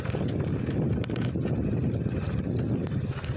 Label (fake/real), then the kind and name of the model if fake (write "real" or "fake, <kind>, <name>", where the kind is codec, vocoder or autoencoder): real